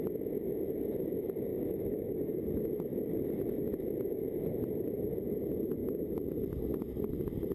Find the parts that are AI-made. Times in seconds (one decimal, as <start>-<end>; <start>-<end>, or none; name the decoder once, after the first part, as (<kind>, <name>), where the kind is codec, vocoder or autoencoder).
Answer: 1.5-2.4 (autoencoder, DAC-VAE)